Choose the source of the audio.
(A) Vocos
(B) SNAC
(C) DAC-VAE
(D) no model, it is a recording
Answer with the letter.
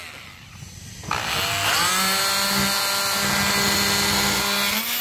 D